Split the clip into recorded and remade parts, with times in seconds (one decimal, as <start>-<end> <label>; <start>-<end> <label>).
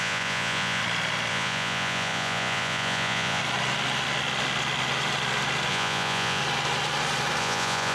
0.0-0.8 remade; 0.8-1.3 recorded; 1.3-3.4 remade; 3.4-5.7 recorded; 5.7-6.4 remade; 6.4-7.4 recorded; 7.4-7.9 remade